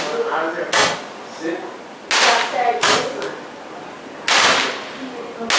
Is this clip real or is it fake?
real